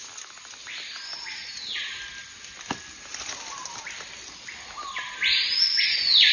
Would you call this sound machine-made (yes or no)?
no